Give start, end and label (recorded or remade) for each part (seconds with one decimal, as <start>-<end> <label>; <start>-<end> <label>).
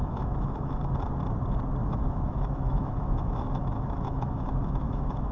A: 0.0-0.9 remade; 0.9-1.8 recorded; 1.8-5.3 remade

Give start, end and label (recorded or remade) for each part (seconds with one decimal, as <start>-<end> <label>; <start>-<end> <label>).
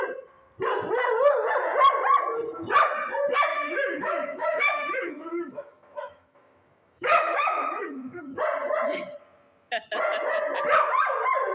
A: 0.0-3.5 recorded; 3.5-8.2 remade; 8.2-11.5 recorded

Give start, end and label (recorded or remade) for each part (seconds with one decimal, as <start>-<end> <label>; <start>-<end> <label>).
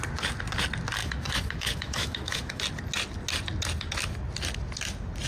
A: 0.0-1.0 recorded; 1.0-2.6 remade; 2.6-5.3 recorded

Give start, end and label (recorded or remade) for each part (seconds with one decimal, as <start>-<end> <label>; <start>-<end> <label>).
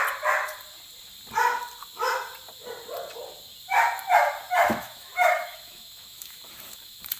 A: 0.0-4.6 recorded; 4.6-7.2 remade